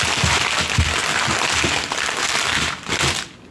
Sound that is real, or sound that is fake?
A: real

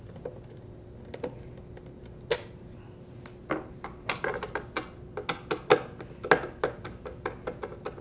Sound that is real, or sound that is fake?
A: real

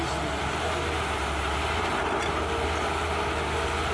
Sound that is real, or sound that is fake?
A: real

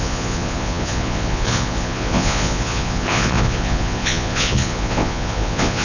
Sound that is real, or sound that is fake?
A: fake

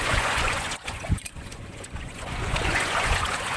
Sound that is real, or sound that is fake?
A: fake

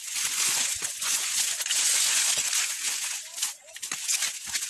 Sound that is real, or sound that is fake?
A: fake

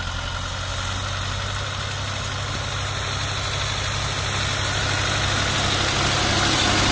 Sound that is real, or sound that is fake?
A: real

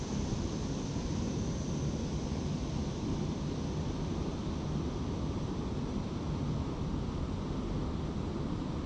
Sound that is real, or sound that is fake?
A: real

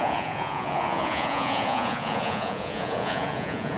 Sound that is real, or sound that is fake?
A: fake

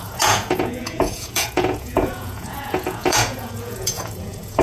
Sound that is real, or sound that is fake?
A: fake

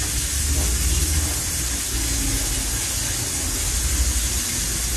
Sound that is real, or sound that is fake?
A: real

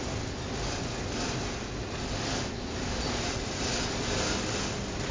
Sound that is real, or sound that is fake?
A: real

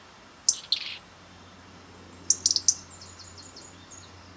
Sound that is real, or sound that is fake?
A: real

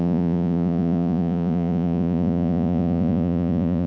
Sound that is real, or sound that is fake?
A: fake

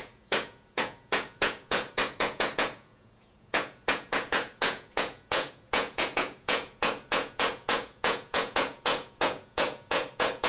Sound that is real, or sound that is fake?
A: fake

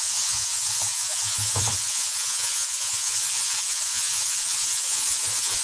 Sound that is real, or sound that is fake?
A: fake